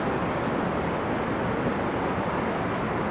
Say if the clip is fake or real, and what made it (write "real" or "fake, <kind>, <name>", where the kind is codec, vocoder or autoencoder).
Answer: real